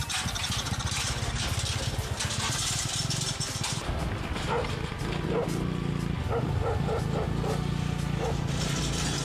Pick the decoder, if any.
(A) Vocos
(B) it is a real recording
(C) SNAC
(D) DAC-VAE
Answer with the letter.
B